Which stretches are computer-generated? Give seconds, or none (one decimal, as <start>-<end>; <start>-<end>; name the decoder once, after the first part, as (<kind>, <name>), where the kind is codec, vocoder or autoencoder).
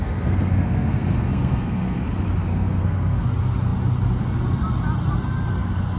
0.0-2.0 (codec, SNAC); 2.5-3.2